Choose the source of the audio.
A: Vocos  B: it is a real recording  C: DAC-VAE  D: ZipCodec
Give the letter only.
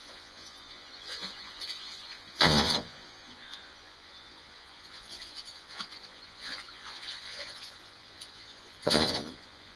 A